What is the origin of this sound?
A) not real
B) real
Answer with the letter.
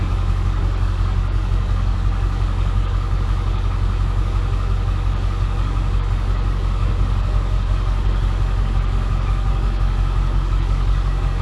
A